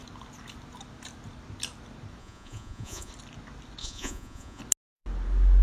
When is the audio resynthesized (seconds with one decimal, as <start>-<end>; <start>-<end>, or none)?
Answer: 2.2-3.1; 3.8-4.6